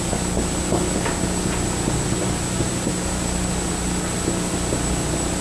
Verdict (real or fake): real